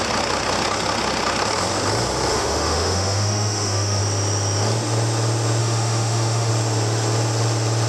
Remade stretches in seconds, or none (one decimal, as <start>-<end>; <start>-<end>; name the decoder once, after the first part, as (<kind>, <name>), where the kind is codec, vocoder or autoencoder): 2.3-4.0 (autoencoder, DAC-VAE); 5.6-6.5